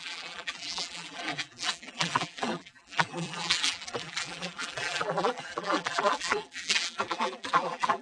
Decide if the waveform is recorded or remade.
remade